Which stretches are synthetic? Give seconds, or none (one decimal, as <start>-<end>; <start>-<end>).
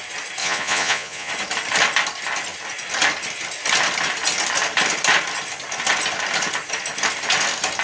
0.4-1.3